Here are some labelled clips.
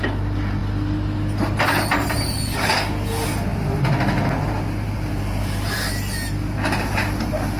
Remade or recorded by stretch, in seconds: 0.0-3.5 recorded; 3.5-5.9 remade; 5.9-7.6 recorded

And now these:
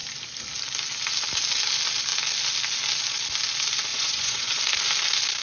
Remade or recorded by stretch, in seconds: 0.0-3.9 recorded; 3.9-4.5 remade; 4.5-5.4 recorded

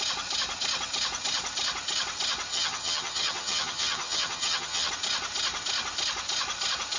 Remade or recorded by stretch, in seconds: 0.0-2.5 recorded; 2.5-4.9 remade; 4.9-7.0 recorded

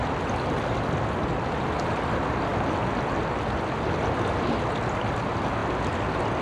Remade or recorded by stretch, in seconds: 0.0-6.4 recorded

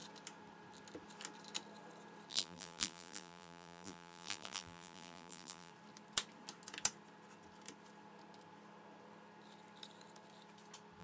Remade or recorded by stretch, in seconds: 0.0-2.3 recorded; 2.3-5.7 remade; 5.7-11.0 recorded

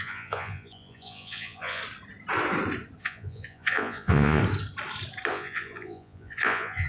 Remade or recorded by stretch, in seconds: 0.0-1.8 remade; 1.8-3.0 recorded; 3.0-4.4 remade; 4.4-5.3 recorded; 5.3-6.9 remade